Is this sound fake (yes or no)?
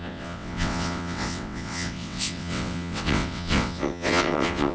yes